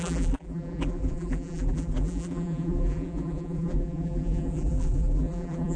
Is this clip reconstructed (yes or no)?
yes